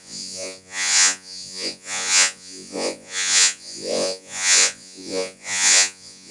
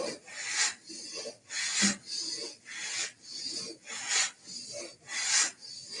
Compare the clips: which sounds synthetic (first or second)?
first